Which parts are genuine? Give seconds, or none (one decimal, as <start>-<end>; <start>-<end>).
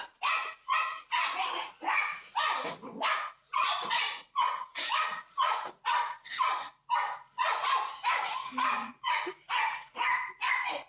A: none